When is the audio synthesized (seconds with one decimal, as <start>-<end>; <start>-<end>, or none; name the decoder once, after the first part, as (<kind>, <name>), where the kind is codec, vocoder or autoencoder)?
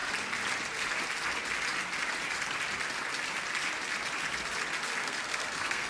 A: 5.0-5.9 (codec, SNAC)